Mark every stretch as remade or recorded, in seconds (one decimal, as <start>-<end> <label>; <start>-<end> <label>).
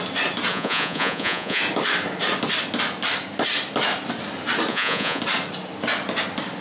0.0-0.5 recorded; 0.5-1.6 remade; 1.6-4.7 recorded; 4.7-5.2 remade; 5.2-6.6 recorded